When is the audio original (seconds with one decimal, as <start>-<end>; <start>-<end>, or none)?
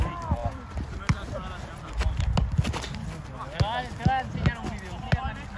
0.0-0.4; 1.7-5.6